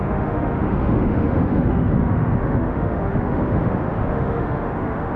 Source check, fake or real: fake